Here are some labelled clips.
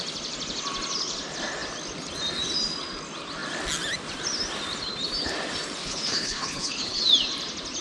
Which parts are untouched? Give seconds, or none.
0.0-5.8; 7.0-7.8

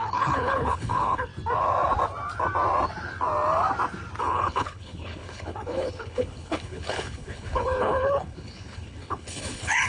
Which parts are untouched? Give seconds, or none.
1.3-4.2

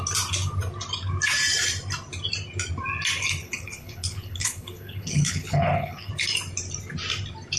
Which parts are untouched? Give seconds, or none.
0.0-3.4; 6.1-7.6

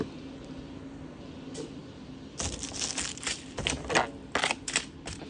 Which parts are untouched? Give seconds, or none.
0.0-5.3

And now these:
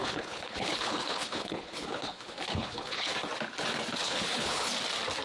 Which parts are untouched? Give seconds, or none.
3.1-4.0; 4.7-5.2

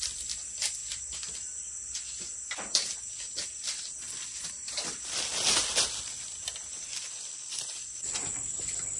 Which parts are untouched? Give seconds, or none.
0.0-9.0

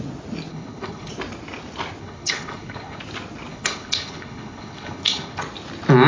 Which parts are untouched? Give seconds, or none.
0.0-0.5; 1.1-2.0; 3.0-3.5; 5.4-6.1

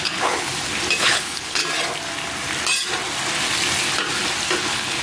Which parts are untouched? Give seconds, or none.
0.5-1.0; 1.6-4.6